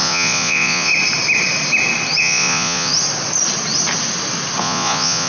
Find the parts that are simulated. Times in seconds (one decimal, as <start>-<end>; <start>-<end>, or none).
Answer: 0.0-0.9; 2.2-2.9; 4.6-5.3